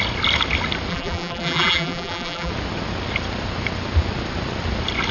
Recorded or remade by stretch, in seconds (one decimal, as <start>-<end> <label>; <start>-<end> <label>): 0.0-0.9 recorded; 0.9-2.5 remade; 2.5-5.1 recorded